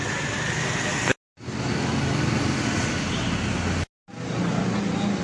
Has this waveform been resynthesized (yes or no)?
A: no